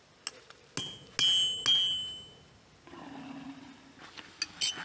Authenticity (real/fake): real